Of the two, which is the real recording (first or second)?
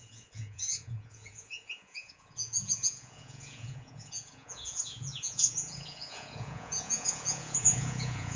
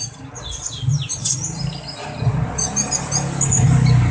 second